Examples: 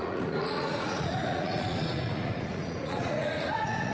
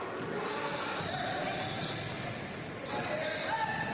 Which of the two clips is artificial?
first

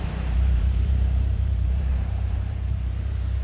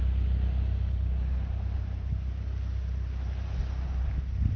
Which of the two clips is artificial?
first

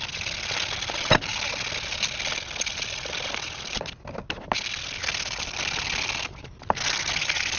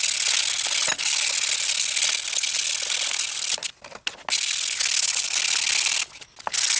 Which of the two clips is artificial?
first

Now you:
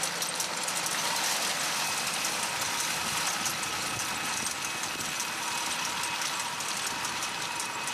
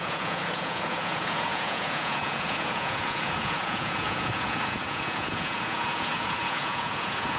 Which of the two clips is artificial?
second